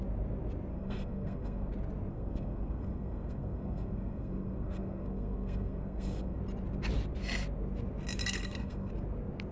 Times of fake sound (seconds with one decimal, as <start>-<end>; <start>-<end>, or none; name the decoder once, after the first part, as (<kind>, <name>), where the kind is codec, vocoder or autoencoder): 0.7-1.7 (codec, SNAC); 2.1-6.4; 8.2-8.9